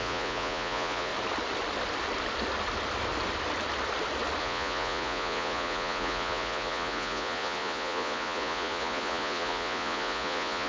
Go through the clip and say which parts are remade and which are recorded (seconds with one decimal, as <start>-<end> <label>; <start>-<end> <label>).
0.0-1.1 remade; 1.1-4.4 recorded; 4.4-10.7 remade